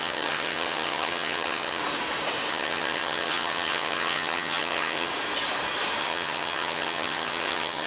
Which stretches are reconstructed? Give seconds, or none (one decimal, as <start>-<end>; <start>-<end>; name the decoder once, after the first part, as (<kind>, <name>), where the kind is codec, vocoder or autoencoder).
0.0-1.8 (vocoder, HiFi-GAN); 2.5-5.1; 6.0-7.9